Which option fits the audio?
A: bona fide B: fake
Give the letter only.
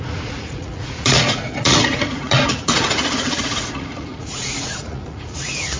B